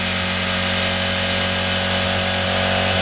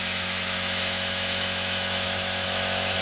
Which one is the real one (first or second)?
first